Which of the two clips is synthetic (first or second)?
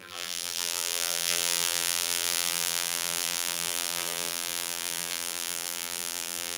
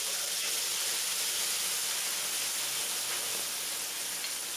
first